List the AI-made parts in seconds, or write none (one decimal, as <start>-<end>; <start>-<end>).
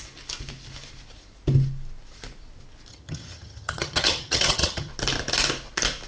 2.9-4.9